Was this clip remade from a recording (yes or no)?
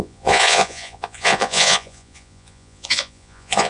yes